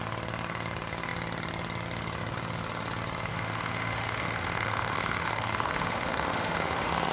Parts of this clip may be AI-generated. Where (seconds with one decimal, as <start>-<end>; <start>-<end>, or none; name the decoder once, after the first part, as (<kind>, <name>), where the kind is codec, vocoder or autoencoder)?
3.3-7.1 (autoencoder, DAC-VAE)